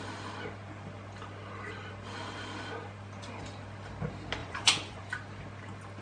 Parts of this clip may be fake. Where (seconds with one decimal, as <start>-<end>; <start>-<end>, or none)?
4.4-5.0